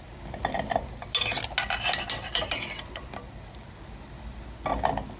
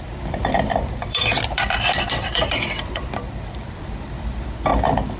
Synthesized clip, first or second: second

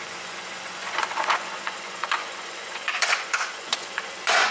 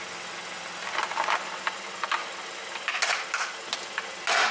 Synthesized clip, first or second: first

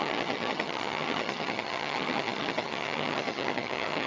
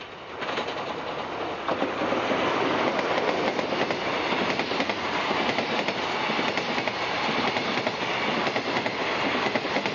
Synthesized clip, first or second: first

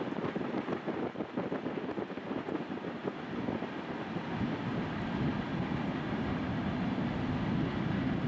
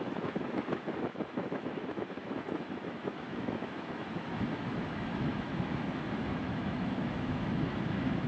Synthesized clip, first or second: second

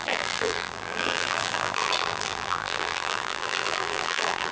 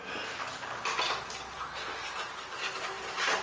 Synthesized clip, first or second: first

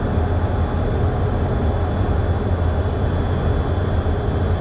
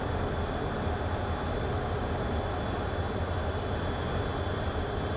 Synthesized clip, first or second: second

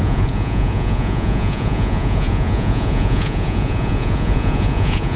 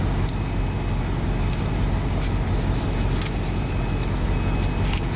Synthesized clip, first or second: first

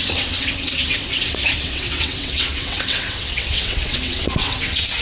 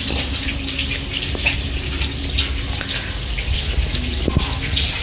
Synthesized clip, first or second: first